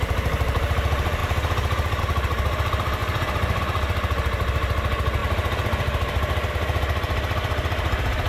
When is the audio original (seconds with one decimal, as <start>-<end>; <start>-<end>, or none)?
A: 0.0-3.0; 3.6-5.2; 6.5-8.3